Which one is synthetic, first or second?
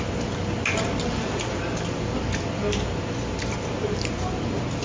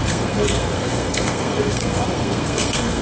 second